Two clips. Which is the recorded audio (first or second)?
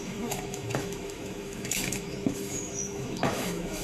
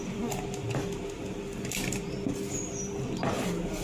second